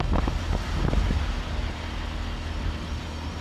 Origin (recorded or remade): recorded